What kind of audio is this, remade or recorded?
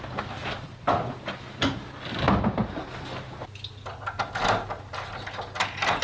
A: recorded